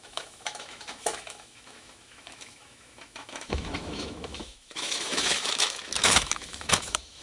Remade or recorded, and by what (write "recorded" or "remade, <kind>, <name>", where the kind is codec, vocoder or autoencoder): remade, autoencoder, DAC-VAE